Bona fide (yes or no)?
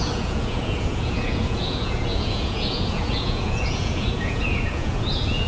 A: no